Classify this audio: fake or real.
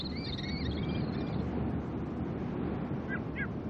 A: real